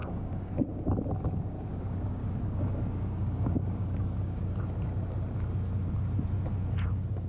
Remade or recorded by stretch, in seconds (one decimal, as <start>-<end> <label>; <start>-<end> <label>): 0.0-0.5 remade; 0.5-1.7 recorded; 1.7-4.4 remade; 4.4-7.3 recorded